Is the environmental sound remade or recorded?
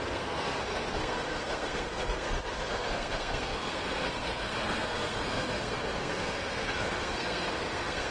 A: remade